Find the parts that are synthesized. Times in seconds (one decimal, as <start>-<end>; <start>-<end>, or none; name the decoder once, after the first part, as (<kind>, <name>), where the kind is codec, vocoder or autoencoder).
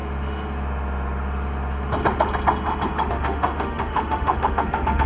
3.1-5.1 (autoencoder, DAC-VAE)